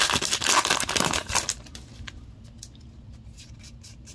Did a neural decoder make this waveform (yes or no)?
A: no